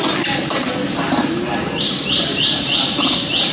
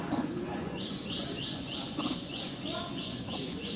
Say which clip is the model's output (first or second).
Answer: second